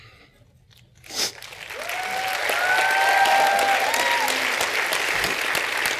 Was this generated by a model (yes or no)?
no